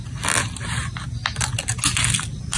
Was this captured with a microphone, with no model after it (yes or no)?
yes